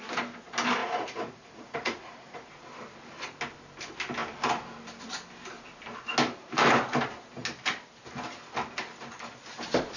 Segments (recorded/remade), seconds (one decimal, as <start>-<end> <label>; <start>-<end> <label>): 0.0-0.8 recorded; 0.8-2.5 remade; 2.5-10.0 recorded